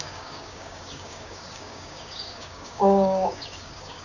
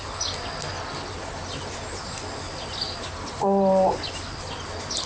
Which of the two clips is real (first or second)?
second